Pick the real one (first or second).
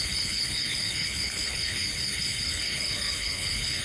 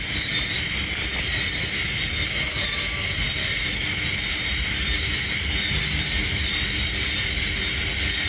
second